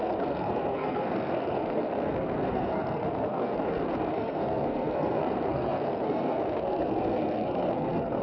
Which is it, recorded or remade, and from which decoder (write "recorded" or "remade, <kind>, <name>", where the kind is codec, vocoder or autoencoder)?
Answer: remade, codec, SNAC